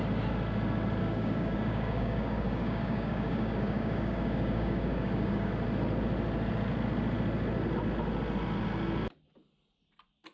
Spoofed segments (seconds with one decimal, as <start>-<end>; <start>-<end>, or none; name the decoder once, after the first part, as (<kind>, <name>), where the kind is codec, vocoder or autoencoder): 1.0-5.5 (codec, DAC)